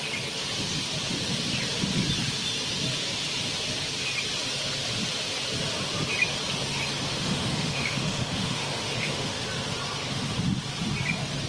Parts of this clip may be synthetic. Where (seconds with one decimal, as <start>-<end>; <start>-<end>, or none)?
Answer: 7.1-9.4